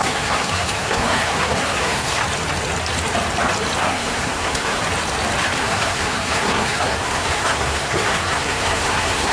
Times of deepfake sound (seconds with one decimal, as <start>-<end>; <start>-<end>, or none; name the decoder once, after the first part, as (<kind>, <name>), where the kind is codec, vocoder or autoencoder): 0.0-2.2 (codec, SNAC); 3.8-4.8; 5.6-9.3